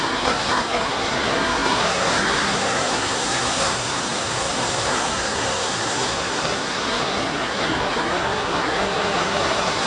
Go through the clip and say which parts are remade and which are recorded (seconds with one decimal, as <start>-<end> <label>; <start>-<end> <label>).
0.0-9.9 remade